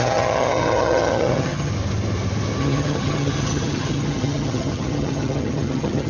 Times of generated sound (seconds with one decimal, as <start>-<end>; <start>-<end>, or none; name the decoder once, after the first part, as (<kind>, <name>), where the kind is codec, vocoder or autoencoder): 0.0-1.7 (vocoder, HiFi-GAN); 2.6-6.1